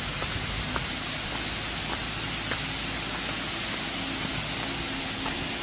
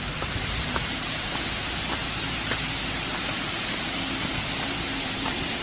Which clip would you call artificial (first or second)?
second